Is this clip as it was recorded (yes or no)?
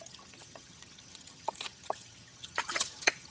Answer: no